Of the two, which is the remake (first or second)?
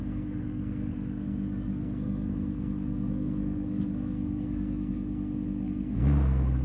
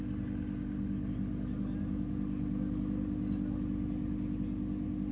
first